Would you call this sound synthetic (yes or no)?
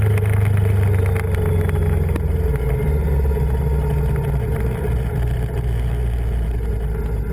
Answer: no